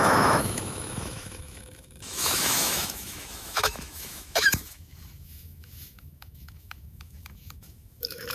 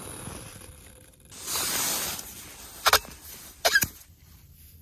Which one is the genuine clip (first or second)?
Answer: second